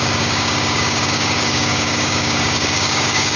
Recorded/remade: remade